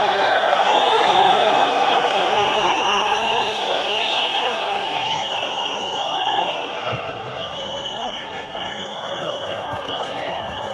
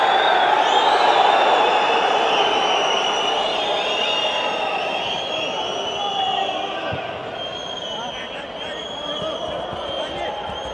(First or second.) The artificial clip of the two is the first